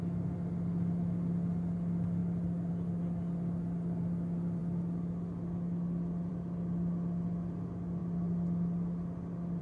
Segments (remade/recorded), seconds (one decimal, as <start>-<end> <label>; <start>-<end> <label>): 0.0-9.6 recorded